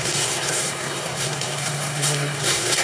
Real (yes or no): no